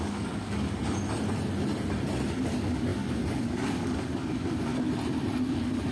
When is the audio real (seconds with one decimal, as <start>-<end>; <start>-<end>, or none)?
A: 0.8-2.4; 4.7-5.5